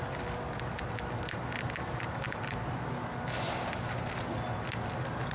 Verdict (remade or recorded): recorded